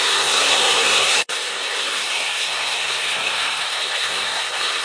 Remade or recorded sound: remade